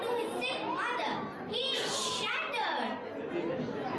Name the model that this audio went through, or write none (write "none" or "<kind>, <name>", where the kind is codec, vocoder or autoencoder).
none